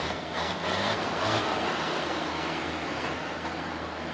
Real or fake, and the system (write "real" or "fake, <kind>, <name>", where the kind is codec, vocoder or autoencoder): fake, codec, SNAC